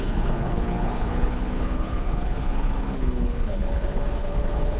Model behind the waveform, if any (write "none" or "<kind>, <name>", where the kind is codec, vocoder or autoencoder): codec, HILCodec